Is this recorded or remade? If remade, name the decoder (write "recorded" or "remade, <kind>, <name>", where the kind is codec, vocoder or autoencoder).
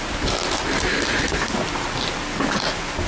recorded